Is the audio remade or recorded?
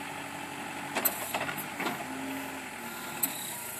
recorded